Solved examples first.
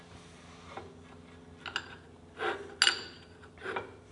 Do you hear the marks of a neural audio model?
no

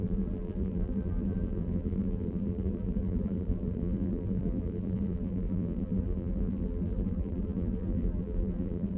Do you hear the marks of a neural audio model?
yes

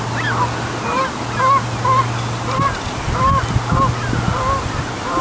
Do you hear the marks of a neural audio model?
no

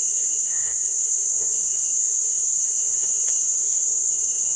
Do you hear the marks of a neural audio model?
yes